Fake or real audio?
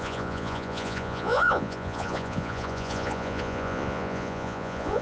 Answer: fake